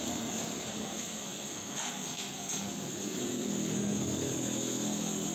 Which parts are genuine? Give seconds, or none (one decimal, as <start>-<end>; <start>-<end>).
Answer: none